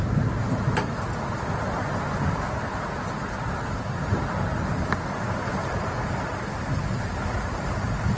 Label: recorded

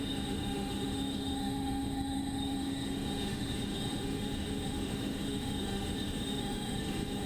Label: remade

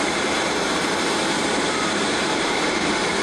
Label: remade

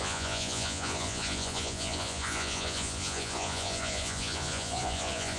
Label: remade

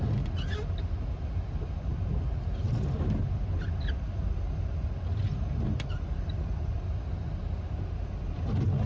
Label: recorded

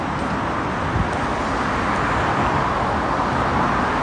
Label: recorded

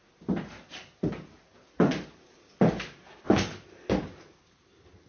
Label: recorded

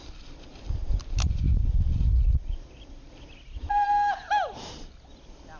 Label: recorded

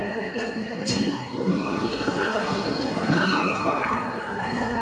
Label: remade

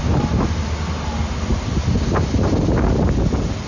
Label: recorded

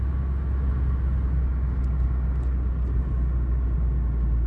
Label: recorded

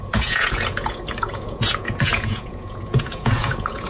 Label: remade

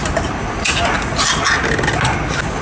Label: recorded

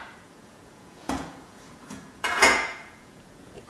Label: remade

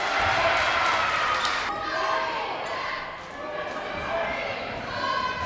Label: recorded